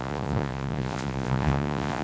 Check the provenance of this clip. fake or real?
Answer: fake